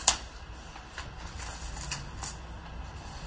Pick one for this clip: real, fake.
real